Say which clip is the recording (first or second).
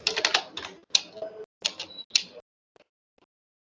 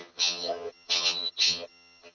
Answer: first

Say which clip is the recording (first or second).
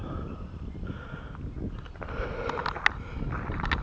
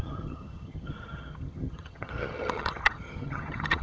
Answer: first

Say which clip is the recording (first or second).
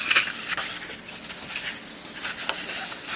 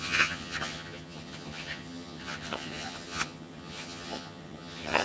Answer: first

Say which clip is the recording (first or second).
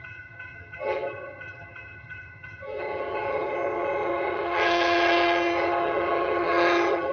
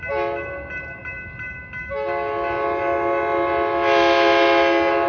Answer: second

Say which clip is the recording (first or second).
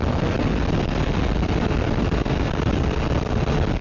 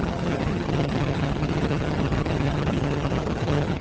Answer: first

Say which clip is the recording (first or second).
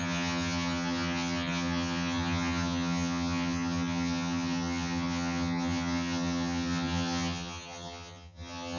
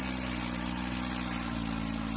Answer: second